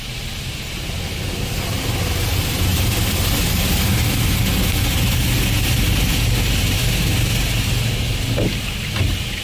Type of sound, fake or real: real